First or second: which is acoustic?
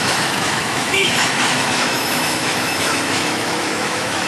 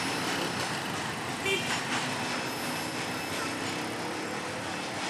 second